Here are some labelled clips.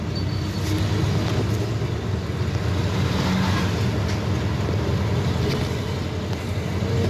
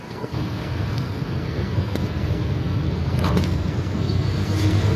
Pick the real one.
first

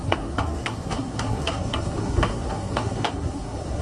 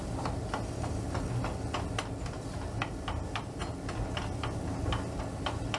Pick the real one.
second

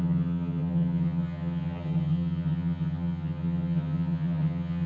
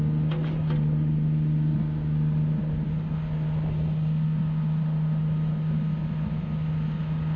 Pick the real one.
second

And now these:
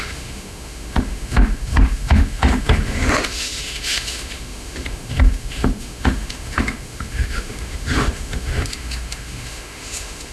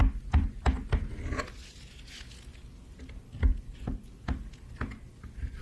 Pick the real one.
second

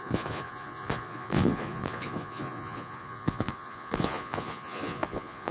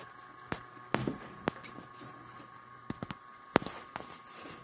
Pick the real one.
second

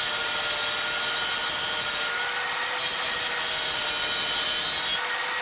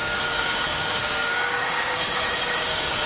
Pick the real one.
first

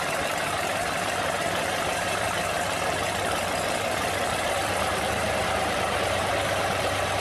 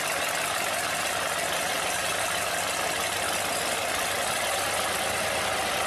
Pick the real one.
second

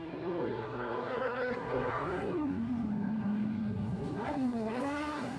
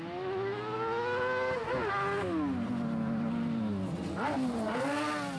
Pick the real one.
second